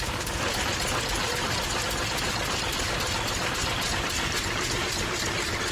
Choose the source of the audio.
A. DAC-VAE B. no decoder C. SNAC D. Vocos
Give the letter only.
B